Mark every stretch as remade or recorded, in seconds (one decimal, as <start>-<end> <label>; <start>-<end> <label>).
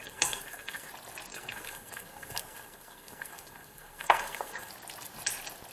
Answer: 0.0-0.9 remade; 0.9-1.3 recorded; 1.3-4.7 remade; 4.7-5.7 recorded